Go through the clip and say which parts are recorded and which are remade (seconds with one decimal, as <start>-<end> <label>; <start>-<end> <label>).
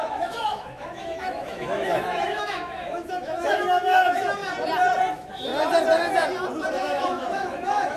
0.0-4.4 remade; 4.4-5.1 recorded; 5.1-5.5 remade; 5.5-6.7 recorded; 6.7-8.0 remade